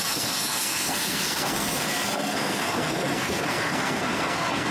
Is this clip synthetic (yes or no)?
yes